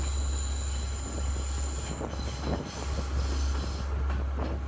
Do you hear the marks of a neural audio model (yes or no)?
no